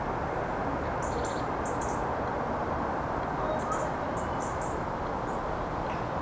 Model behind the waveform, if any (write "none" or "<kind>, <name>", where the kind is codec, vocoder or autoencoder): none